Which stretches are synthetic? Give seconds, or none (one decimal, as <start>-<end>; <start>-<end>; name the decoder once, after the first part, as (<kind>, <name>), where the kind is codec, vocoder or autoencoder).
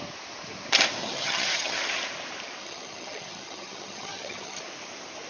1.0-1.8 (vocoder, HiFi-GAN); 2.6-4.6